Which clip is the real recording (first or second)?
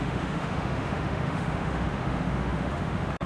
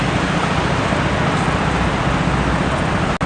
second